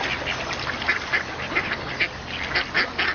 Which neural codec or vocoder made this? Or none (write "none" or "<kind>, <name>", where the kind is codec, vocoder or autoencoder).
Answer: none